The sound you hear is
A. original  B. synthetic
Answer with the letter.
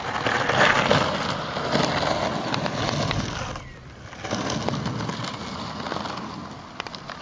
A